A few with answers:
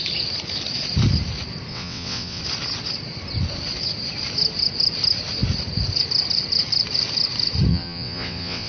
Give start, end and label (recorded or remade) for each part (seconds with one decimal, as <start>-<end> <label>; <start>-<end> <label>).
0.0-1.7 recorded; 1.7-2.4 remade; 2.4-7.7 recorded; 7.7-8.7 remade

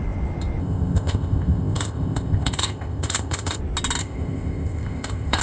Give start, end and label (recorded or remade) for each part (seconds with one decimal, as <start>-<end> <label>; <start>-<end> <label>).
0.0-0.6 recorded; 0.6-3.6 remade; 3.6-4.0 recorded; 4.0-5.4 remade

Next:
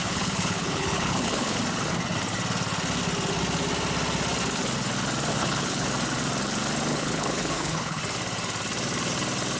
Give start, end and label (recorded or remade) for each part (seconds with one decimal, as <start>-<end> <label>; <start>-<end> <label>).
0.0-1.6 remade; 1.6-5.3 recorded; 5.3-5.9 remade; 5.9-6.9 recorded; 6.9-8.0 remade; 8.0-9.6 recorded

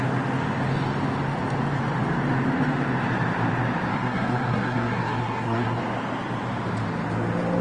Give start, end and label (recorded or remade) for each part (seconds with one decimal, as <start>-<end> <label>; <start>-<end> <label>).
0.0-3.9 recorded; 3.9-5.8 remade; 5.8-7.6 recorded

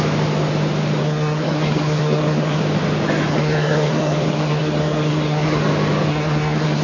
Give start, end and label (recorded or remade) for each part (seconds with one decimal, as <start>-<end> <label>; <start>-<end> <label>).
0.0-1.0 recorded; 1.0-2.6 remade; 2.6-3.3 recorded; 3.3-5.6 remade; 5.6-6.1 recorded; 6.1-6.8 remade

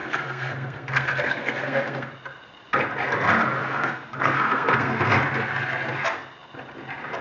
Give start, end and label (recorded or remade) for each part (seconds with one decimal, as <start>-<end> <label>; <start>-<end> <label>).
0.0-2.1 remade; 2.1-3.6 recorded; 3.6-5.1 remade; 5.1-7.2 recorded

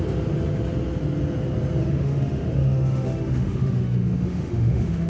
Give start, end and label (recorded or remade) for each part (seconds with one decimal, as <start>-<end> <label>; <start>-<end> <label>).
0.0-1.8 recorded; 1.8-5.1 remade